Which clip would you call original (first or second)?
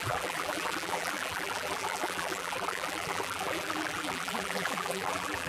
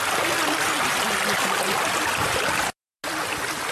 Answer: second